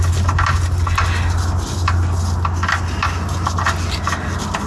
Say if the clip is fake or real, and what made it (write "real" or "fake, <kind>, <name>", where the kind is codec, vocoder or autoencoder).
real